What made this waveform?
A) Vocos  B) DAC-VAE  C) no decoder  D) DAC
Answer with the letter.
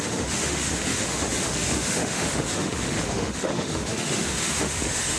B